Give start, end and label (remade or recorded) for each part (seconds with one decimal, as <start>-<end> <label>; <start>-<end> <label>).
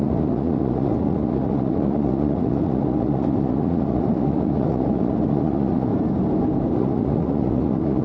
0.0-5.9 remade; 5.9-6.7 recorded; 6.7-8.0 remade